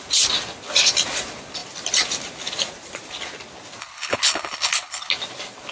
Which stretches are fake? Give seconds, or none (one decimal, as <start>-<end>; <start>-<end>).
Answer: 3.8-5.1